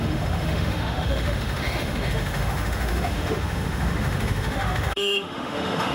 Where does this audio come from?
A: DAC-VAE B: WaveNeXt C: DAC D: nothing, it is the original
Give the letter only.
A